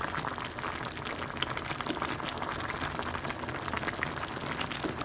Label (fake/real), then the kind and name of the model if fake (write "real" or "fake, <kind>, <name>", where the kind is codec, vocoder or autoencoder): real